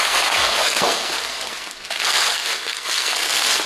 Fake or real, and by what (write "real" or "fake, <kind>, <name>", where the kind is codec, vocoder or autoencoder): fake, codec, SNAC